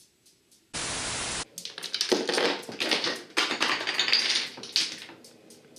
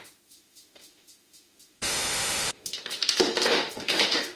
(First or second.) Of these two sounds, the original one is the first